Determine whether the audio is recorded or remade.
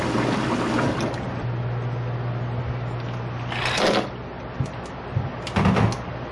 recorded